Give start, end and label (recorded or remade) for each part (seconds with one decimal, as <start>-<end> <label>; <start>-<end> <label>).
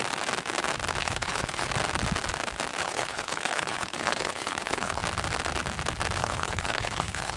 0.0-1.0 recorded; 1.0-1.7 remade; 1.7-2.8 recorded; 2.8-5.0 remade; 5.0-6.2 recorded; 6.2-7.4 remade